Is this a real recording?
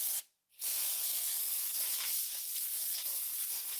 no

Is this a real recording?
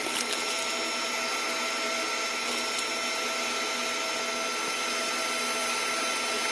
yes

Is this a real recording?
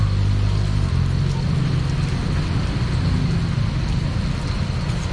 yes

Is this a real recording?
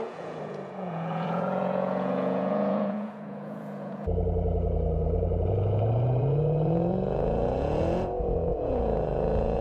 no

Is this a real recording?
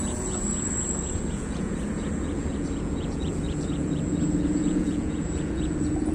no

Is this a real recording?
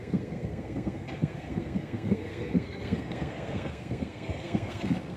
no